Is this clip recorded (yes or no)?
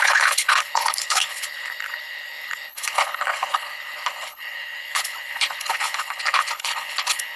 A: no